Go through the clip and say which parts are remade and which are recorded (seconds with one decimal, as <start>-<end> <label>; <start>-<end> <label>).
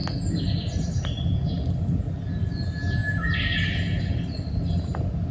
0.0-5.3 recorded